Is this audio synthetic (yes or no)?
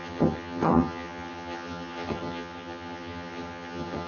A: yes